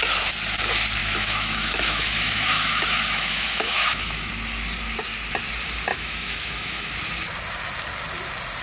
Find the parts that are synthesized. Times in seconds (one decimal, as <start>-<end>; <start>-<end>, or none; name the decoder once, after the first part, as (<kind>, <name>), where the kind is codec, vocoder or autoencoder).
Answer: 1.0-4.3 (autoencoder, DAC-VAE); 5.9-6.9